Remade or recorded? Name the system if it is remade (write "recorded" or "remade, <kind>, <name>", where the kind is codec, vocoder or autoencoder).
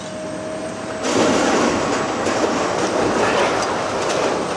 recorded